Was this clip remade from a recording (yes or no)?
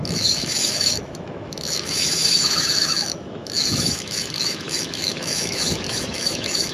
yes